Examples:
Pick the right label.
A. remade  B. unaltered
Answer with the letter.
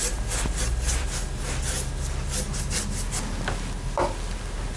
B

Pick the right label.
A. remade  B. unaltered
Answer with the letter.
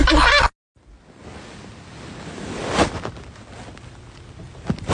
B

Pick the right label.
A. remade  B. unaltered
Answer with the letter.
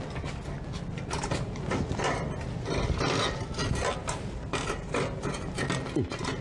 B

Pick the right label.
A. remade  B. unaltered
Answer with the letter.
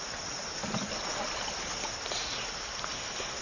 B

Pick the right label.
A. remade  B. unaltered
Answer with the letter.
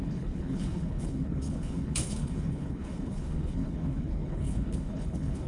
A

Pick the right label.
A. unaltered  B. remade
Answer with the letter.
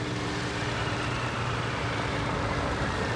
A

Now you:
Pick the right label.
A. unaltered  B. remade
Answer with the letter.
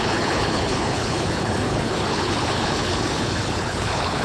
B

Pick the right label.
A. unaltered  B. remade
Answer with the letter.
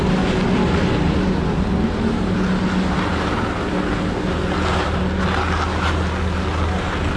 A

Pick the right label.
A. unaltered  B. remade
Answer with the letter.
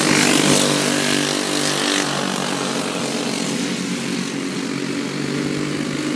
A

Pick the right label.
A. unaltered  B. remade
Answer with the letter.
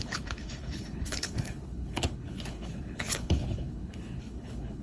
B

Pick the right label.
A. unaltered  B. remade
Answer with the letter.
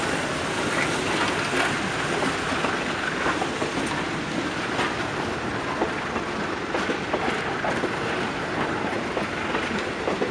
A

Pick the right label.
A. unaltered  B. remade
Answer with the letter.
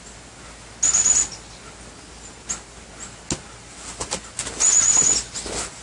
A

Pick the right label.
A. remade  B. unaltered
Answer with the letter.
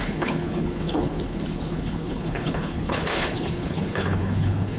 A